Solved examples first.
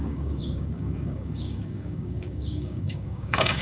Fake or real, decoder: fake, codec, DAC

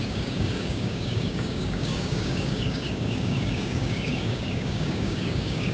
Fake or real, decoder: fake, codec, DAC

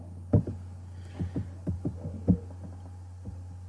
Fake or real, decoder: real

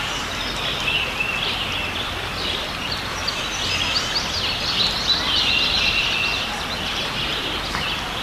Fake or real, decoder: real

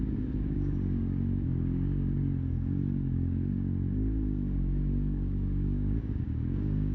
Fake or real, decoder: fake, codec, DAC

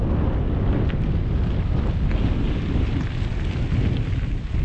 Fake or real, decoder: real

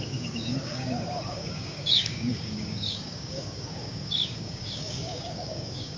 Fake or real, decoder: fake, codec, DAC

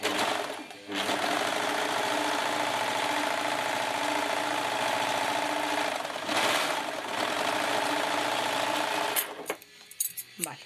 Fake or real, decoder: real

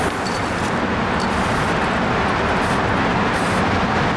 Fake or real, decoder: real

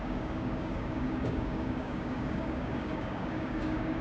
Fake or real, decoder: fake, codec, DAC